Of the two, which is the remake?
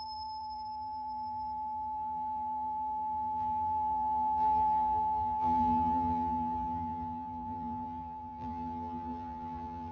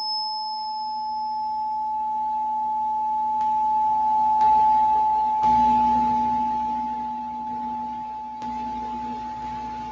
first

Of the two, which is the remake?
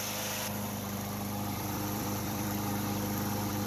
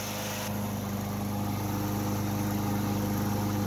first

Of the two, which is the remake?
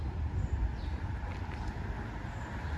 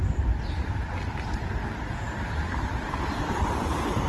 second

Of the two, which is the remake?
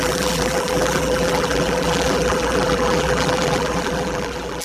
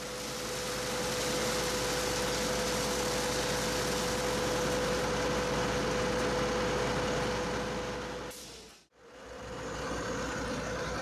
first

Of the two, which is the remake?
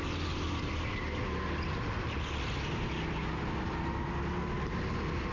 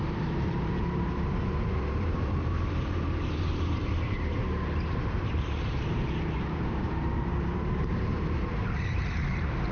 second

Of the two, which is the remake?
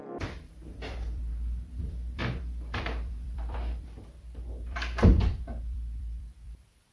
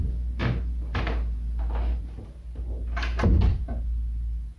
first